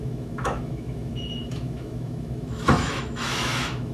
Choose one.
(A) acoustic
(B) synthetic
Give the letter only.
B